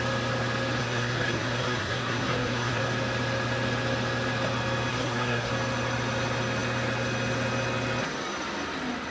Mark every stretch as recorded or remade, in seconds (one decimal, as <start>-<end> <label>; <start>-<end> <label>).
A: 0.0-0.8 recorded; 0.8-2.8 remade; 2.8-4.9 recorded; 4.9-5.5 remade; 5.5-9.1 recorded